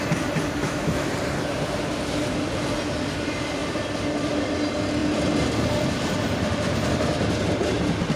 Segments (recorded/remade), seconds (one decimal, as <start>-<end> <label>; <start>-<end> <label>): 0.0-0.6 recorded; 0.6-1.1 remade; 1.1-8.2 recorded